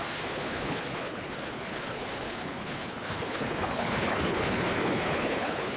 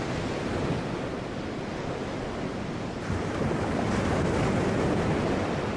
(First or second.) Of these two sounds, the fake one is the first